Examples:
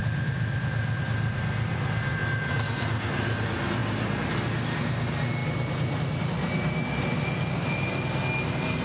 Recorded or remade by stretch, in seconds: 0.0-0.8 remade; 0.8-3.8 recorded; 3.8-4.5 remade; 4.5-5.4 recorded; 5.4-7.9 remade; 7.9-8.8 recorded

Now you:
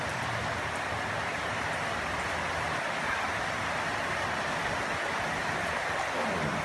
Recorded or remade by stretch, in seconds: 0.0-5.4 recorded; 5.4-6.0 remade; 6.0-6.6 recorded

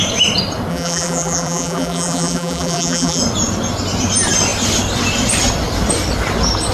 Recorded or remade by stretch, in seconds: 0.0-0.7 recorded; 0.7-3.2 remade; 3.2-6.7 recorded